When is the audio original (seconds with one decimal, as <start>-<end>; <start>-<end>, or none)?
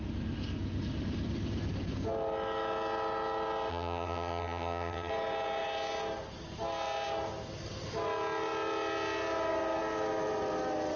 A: 0.0-3.7; 5.1-11.0